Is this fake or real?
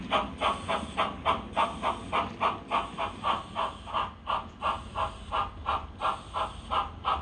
real